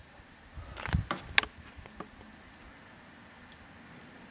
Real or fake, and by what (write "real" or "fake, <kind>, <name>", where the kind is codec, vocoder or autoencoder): real